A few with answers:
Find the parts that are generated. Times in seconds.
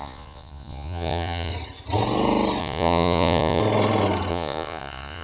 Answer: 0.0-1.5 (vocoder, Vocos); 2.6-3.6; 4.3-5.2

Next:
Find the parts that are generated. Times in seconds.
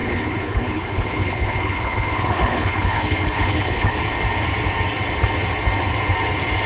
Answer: 0.0-4.0 (codec, HILCodec)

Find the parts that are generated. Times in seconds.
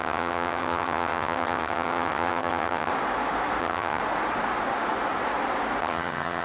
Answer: 0.0-2.9 (vocoder, HiFi-GAN); 3.6-4.0; 5.8-6.4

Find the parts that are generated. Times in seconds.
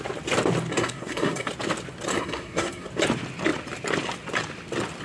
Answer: 0.7-1.5 (codec, SNAC); 2.1-2.9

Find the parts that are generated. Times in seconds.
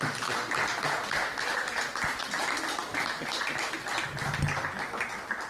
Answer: none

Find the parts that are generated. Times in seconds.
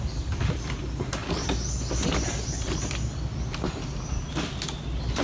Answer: 0.0-1.2 (vocoder, BigVGAN v2); 4.3-5.2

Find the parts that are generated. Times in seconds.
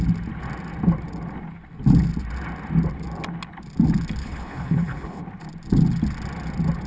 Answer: 4.2-5.2 (codec, HILCodec)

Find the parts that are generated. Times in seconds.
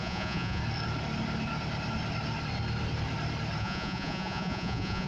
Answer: 0.0-0.6 (vocoder, Vocos); 3.6-5.1